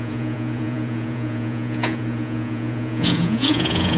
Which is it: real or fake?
fake